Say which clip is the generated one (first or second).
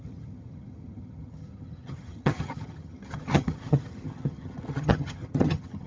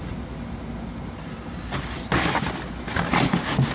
first